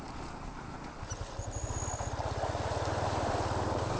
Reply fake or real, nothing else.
real